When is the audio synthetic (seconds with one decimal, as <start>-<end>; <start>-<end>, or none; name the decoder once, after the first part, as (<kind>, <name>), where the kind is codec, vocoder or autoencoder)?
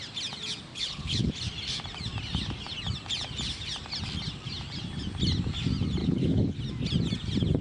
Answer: 0.7-1.3 (codec, HILCodec); 6.0-6.6